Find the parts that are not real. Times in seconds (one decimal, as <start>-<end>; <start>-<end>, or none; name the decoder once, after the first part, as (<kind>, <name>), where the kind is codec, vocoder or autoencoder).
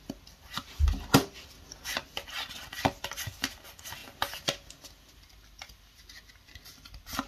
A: 0.0-4.0 (vocoder, BigVGAN v2); 5.1-7.3